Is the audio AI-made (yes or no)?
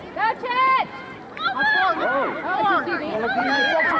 yes